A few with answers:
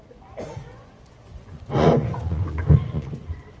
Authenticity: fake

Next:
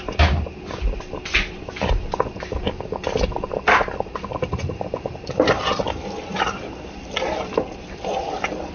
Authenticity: real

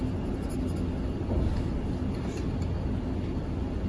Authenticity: real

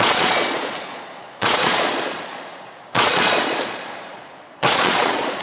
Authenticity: fake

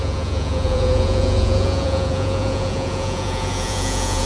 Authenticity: fake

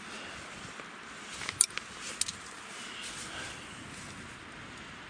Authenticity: real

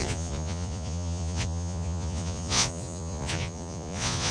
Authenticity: fake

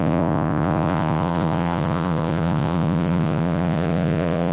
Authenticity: fake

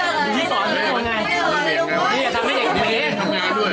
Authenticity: real